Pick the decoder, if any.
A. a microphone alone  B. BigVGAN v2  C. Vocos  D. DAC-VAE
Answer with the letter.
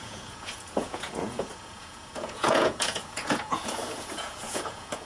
C